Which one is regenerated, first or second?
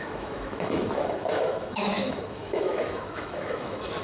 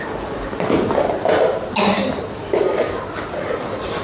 first